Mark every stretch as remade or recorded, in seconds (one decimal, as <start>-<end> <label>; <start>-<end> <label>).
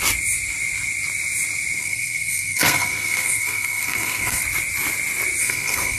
0.0-1.8 recorded; 1.8-4.4 remade; 4.4-5.4 recorded; 5.4-6.0 remade